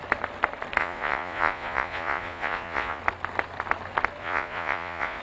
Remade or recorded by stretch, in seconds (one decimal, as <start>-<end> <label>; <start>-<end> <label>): 0.0-0.8 recorded; 0.8-3.0 remade; 3.0-4.2 recorded; 4.2-5.2 remade

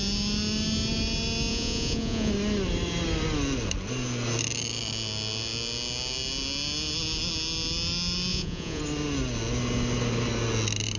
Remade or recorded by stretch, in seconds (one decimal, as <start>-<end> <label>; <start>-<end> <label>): 0.0-1.5 recorded; 1.5-2.3 remade; 2.3-8.3 recorded; 8.3-8.8 remade; 8.8-11.0 recorded

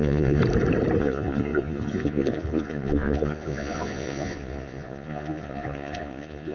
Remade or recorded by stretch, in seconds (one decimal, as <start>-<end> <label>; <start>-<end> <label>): 0.0-0.4 remade; 0.4-1.0 recorded; 1.0-6.5 remade

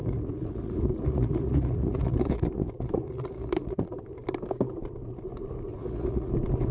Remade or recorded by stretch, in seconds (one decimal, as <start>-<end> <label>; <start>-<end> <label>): 0.0-4.0 remade; 4.0-5.7 recorded; 5.7-6.3 remade; 6.3-6.7 recorded

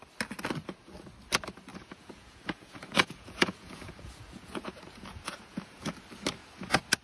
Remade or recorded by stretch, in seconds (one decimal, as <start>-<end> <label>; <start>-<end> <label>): 0.0-1.7 recorded; 1.7-5.9 remade; 5.9-7.0 recorded